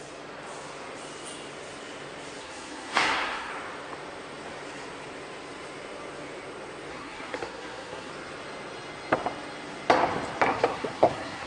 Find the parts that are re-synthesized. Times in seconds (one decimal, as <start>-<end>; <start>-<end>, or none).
2.4-3.5; 6.9-8.1; 10.5-11.5